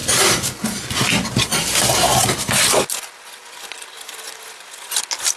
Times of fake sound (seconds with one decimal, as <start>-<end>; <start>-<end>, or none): none